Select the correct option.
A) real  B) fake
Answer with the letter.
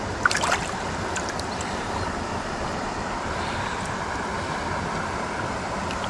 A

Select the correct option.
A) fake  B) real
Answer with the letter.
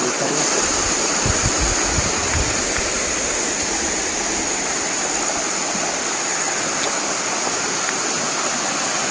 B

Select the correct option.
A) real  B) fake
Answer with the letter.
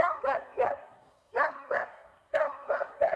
B